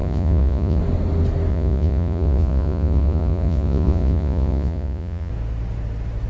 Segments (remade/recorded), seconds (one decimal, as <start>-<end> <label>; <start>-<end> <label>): 0.0-0.8 remade; 0.8-1.5 recorded; 1.5-5.3 remade; 5.3-6.3 recorded

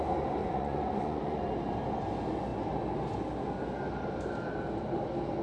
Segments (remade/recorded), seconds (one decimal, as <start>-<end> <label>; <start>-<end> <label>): 0.0-0.4 recorded; 0.4-1.5 remade; 1.5-5.4 recorded

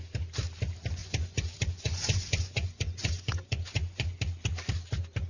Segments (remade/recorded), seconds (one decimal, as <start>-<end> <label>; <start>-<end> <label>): 0.0-1.0 recorded; 1.0-4.2 remade; 4.2-5.3 recorded

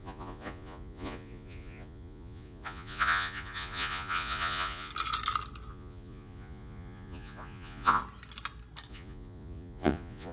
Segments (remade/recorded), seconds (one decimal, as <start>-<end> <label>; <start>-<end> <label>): 0.0-4.9 remade; 4.9-5.7 recorded; 5.7-8.0 remade; 8.0-8.9 recorded; 8.9-10.3 remade

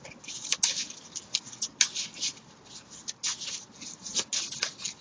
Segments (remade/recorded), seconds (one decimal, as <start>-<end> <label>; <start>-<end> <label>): 0.0-5.0 recorded

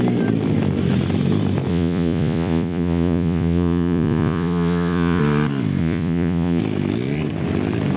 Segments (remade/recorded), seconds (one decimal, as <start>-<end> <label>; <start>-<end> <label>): 0.0-1.7 recorded; 1.7-5.2 remade; 5.2-5.8 recorded; 5.8-6.6 remade; 6.6-8.0 recorded